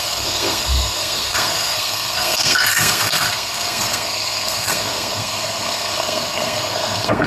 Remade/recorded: remade